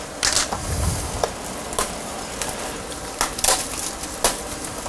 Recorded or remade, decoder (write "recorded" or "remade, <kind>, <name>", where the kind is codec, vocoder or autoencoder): recorded